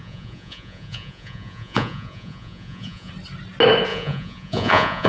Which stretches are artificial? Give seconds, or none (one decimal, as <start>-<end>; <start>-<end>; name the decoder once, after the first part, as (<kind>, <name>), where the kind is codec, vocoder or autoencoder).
0.0-3.1 (vocoder, Vocos); 3.9-5.1